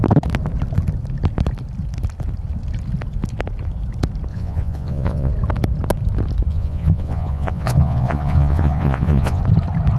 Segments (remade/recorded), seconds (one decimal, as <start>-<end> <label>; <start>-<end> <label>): 0.0-4.3 recorded; 4.3-5.3 remade; 5.3-6.5 recorded; 6.5-9.4 remade; 9.4-10.0 recorded